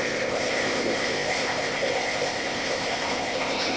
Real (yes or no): no